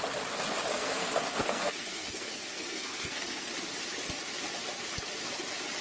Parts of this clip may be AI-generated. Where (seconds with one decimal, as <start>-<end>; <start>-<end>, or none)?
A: 0.7-3.5